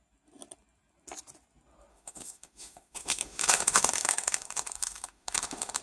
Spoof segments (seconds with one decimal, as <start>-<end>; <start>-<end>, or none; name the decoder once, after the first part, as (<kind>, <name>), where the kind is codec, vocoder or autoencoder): 1.9-5.8 (autoencoder, DAC-VAE)